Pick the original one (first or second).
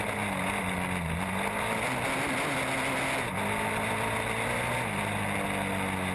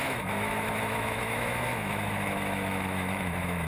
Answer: first